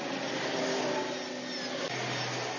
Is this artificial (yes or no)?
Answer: no